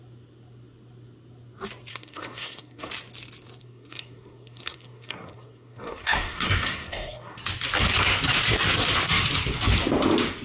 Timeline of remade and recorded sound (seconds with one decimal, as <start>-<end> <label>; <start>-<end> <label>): 0.0-1.9 recorded; 1.9-2.9 remade; 2.9-3.6 recorded; 3.6-7.4 remade; 7.4-10.4 recorded